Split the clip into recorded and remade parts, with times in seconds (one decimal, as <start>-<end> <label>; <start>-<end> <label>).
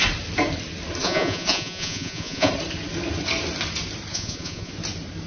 0.0-1.0 recorded; 1.0-2.5 remade; 2.5-4.1 recorded; 4.1-4.7 remade; 4.7-5.3 recorded